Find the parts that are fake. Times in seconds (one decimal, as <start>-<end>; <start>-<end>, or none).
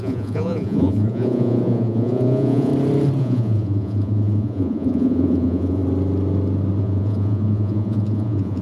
0.0-2.7; 3.2-5.8; 6.8-8.6